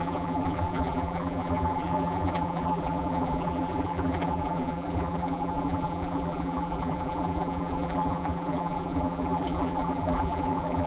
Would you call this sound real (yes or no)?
no